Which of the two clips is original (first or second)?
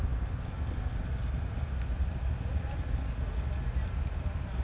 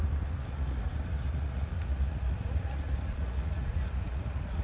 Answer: first